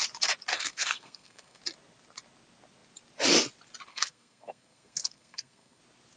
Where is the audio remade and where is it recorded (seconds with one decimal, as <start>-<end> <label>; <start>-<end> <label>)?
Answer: 0.0-0.5 recorded; 0.5-1.6 remade; 1.6-3.9 recorded; 3.9-5.8 remade; 5.8-6.2 recorded